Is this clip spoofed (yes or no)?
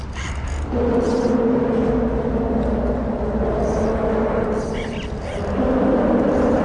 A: no